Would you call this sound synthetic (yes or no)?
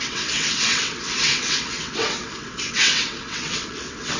yes